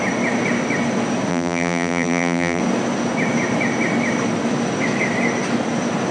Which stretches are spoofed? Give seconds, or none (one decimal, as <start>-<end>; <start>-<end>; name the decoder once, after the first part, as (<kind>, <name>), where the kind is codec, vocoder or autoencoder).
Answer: 1.3-2.6 (vocoder, BigVGAN v2)